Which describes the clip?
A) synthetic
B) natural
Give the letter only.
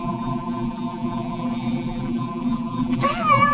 A